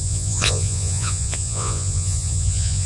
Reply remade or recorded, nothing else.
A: remade